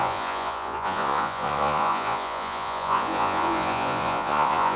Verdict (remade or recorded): remade